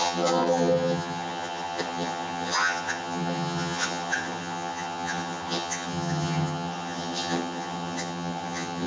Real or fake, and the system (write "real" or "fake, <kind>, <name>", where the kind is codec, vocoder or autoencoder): fake, vocoder, HiFi-GAN